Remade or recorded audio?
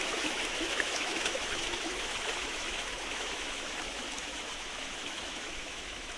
remade